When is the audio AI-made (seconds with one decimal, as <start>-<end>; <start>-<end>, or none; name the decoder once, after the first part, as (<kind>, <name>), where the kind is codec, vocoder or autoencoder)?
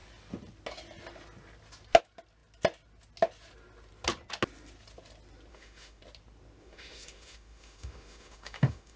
5.5-6.0 (autoencoder, DAC-VAE); 6.6-9.0